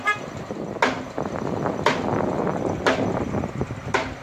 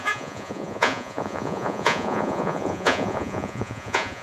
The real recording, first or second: first